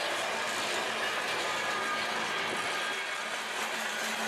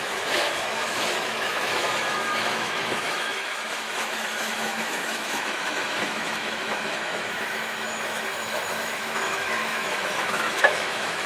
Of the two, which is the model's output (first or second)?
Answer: second